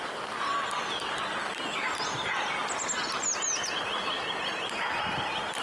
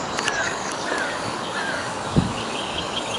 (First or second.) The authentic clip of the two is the first